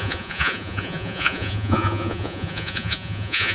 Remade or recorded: remade